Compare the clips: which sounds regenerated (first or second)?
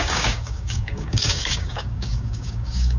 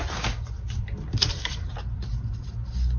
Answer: first